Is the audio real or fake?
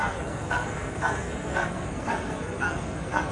fake